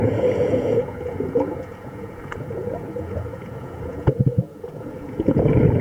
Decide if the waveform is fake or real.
fake